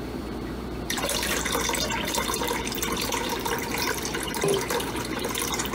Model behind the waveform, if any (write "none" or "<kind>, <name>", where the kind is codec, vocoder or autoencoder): vocoder, BigVGAN v2